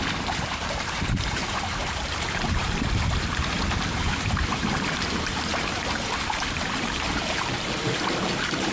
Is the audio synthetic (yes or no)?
yes